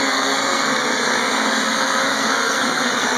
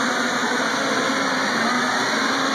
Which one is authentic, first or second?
second